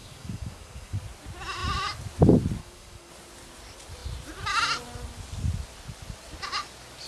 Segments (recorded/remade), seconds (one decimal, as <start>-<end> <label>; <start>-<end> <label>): 0.0-1.0 remade; 1.0-2.6 recorded; 2.6-3.1 remade; 3.1-7.1 recorded